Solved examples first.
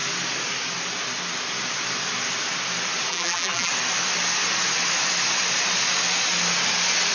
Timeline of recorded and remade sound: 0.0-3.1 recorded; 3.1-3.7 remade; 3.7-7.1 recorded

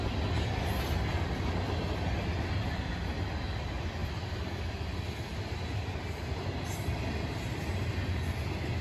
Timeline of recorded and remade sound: 0.0-4.0 recorded; 4.0-4.6 remade; 4.6-8.8 recorded

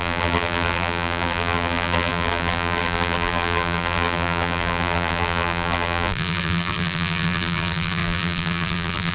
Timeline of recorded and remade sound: 0.0-9.1 remade

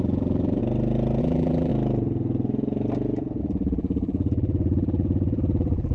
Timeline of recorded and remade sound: 0.0-0.6 remade; 0.6-1.2 recorded; 1.2-1.7 remade; 1.7-3.4 recorded; 3.4-5.9 remade

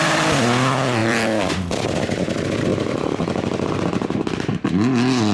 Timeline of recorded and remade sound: 0.0-5.3 remade

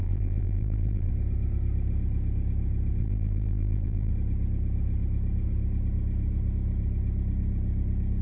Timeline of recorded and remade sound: 0.0-1.1 remade; 1.1-3.0 recorded; 3.0-4.1 remade; 4.1-8.2 recorded

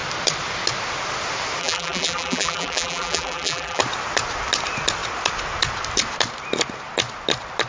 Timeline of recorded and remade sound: 0.0-1.6 recorded; 1.6-3.8 remade; 3.8-7.7 recorded